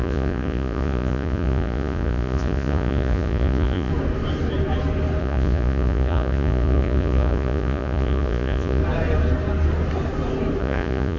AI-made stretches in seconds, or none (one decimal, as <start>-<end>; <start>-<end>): 0.0-3.9; 5.2-8.8; 10.6-11.2